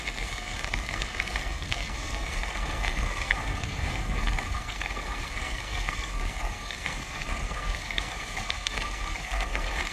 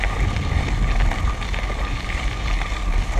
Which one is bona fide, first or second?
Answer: second